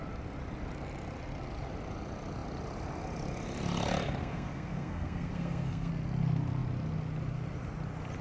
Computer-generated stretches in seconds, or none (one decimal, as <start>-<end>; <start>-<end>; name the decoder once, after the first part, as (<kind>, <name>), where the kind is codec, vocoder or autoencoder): 4.2-5.9 (codec, SNAC)